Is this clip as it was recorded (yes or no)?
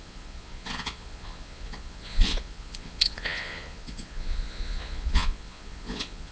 no